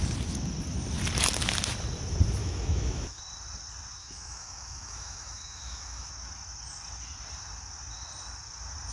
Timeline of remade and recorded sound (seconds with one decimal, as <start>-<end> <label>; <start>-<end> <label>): 0.0-2.4 recorded; 2.4-3.2 remade; 3.2-4.0 recorded; 4.0-6.1 remade; 6.1-8.9 recorded